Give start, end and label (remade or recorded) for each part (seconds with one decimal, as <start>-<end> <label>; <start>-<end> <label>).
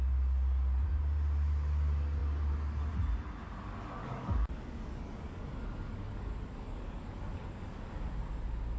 0.0-4.0 recorded; 4.0-7.8 remade; 7.8-8.8 recorded